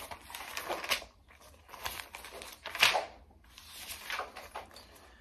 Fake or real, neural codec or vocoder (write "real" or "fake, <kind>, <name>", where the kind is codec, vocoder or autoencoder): real